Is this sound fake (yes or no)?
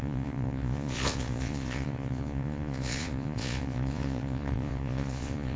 yes